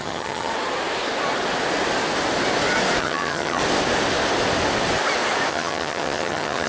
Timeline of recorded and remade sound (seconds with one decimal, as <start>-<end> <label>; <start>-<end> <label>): 0.0-0.5 remade; 0.5-3.0 recorded; 3.0-3.6 remade; 3.6-5.5 recorded; 5.5-6.7 remade